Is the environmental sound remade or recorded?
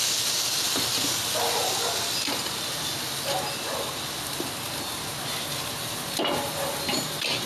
recorded